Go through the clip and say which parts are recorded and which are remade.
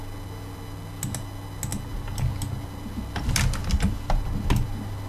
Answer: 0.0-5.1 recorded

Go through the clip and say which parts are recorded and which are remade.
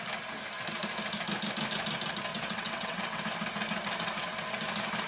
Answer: 0.0-2.3 recorded; 2.3-3.2 remade; 3.2-5.1 recorded